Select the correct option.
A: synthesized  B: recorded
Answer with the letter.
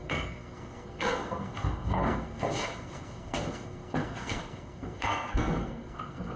A